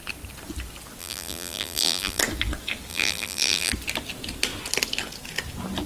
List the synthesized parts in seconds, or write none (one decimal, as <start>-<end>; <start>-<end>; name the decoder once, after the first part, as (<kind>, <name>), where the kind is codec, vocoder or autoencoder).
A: 1.0-2.2 (vocoder, BigVGAN v2); 2.9-3.7